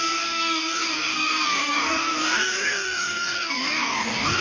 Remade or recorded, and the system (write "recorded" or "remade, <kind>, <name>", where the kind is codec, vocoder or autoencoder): remade, codec, DAC